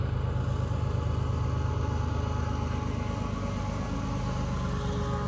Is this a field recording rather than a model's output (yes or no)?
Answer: yes